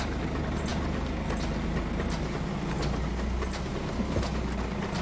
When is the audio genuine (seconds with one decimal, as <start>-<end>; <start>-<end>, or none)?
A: 0.0-5.0